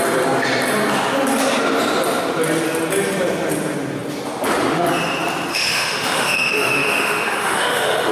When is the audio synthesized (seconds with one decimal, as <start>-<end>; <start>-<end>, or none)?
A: 5.5-8.1